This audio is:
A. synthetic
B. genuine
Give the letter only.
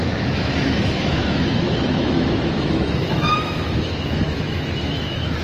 A